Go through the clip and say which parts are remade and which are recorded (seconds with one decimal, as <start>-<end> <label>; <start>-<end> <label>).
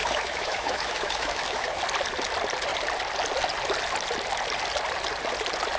0.0-1.8 remade; 1.8-5.8 recorded